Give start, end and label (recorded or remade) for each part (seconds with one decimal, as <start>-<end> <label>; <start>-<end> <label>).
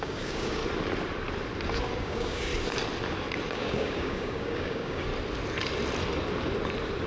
0.0-0.6 remade; 0.6-2.0 recorded; 2.0-2.5 remade; 2.5-3.5 recorded; 3.5-5.1 remade; 5.1-7.1 recorded